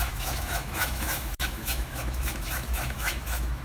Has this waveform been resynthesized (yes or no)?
yes